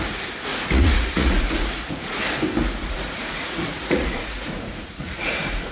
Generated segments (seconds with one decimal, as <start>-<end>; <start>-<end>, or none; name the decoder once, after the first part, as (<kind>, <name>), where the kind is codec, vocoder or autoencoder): 0.5-2.2 (vocoder, Vocos); 2.8-5.7

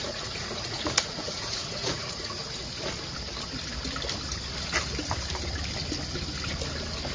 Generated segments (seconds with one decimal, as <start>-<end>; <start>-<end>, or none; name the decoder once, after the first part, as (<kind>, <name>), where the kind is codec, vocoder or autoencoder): 0.0-2.4 (vocoder, Vocos)

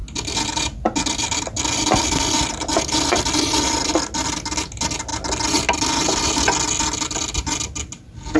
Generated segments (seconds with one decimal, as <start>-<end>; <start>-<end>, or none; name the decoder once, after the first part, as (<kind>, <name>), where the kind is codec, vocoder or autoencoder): none

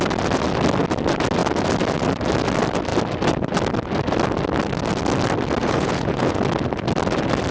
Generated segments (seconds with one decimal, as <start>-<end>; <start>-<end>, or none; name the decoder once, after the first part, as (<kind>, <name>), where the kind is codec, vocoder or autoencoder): 5.6-6.4 (vocoder, Vocos)

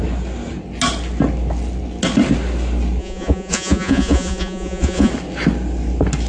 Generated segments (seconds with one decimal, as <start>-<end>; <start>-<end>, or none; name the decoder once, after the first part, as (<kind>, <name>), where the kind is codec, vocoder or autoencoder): 3.0-5.1 (vocoder, Vocos)

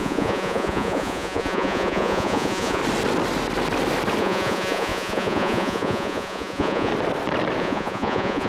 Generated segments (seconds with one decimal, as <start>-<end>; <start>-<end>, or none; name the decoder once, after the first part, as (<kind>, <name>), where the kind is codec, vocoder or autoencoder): 0.0-2.8 (vocoder, Vocos); 4.2-6.9; 7.6-8.5

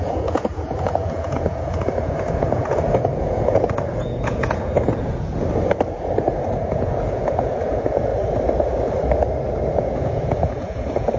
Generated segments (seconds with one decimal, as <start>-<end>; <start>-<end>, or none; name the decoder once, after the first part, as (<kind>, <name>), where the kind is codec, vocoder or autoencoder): 0.0-5.3 (vocoder, Vocos); 6.6-8.1; 9.7-11.2